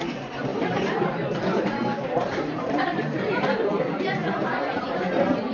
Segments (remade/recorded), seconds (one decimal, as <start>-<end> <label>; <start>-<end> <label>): 0.0-0.5 recorded; 0.5-1.1 remade; 1.1-1.5 recorded; 1.5-3.8 remade; 3.8-5.5 recorded